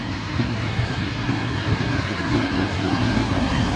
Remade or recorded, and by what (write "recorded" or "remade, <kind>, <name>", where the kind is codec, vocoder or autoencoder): remade, codec, SNAC